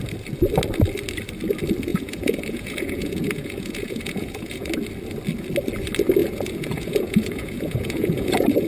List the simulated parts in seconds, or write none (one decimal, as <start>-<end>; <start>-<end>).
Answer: 1.9-4.7; 6.2-8.7